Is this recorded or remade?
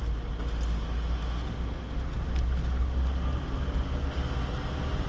recorded